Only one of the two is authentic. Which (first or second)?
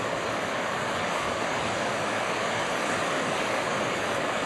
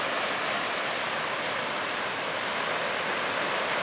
second